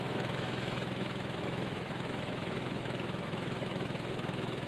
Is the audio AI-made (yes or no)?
yes